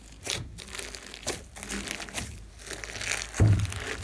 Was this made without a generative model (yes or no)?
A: yes